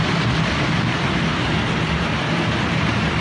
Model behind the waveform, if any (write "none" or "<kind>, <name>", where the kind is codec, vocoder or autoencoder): none